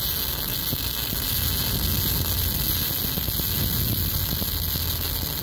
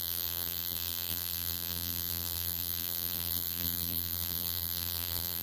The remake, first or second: second